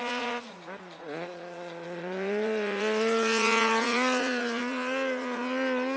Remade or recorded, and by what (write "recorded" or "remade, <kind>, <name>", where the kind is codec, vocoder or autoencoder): remade, vocoder, Vocos